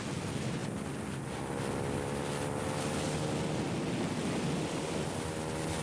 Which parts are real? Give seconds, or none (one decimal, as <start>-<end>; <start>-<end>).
0.0-5.8